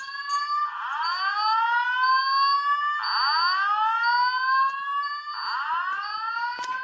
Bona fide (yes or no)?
yes